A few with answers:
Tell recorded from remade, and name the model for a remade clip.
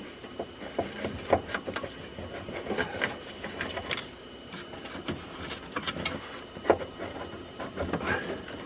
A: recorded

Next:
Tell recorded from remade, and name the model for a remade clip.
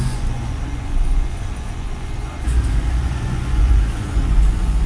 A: remade, vocoder, Vocos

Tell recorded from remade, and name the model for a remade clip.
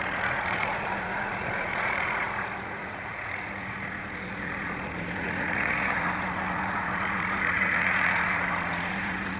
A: remade, vocoder, Vocos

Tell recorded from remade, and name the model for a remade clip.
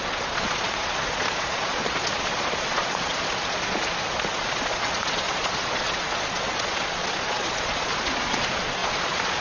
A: remade, vocoder, Vocos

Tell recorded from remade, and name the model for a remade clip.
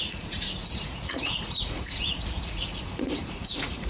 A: remade, vocoder, Vocos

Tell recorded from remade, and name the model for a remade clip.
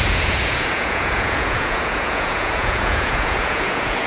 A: remade, vocoder, Vocos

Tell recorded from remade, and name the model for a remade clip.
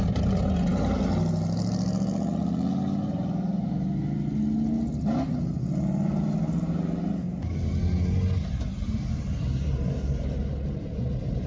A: recorded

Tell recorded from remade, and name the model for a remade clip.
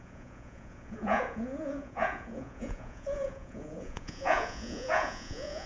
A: remade, vocoder, Vocos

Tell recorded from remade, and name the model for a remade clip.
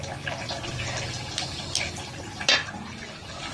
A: recorded